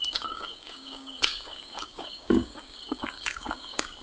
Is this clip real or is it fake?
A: fake